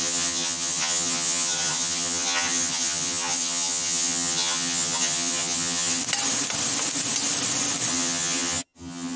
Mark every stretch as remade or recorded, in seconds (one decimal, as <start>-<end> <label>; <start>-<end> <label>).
0.0-6.0 remade; 6.0-7.9 recorded; 7.9-9.2 remade